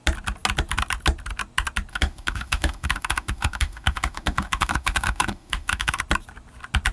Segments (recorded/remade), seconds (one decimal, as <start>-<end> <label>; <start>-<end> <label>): 0.0-1.9 recorded; 1.9-6.0 remade; 6.0-6.9 recorded